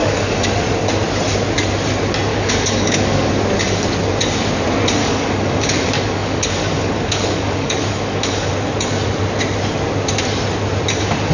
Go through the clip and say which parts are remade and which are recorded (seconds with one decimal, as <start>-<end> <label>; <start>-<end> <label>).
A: 0.0-0.5 remade; 0.5-2.3 recorded; 2.3-3.3 remade; 3.3-5.0 recorded; 5.0-8.5 remade; 8.5-11.3 recorded